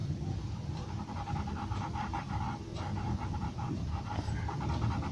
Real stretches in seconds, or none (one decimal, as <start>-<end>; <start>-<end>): 2.3-2.7; 4.1-5.1